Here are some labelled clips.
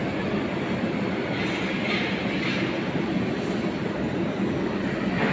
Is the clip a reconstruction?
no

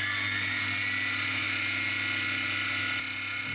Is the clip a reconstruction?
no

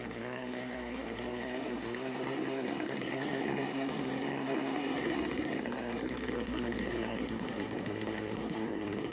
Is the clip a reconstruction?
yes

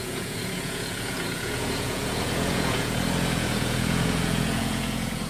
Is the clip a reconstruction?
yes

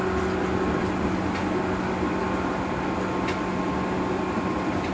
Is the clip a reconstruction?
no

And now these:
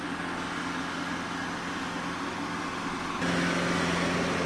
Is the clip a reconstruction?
no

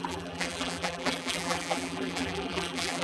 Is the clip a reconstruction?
yes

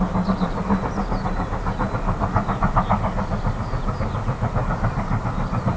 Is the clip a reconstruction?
no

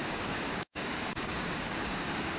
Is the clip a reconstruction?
yes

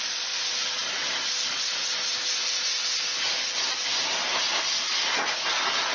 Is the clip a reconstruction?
no